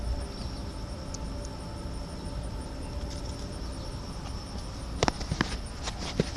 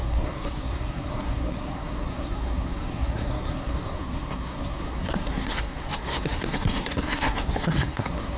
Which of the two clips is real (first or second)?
first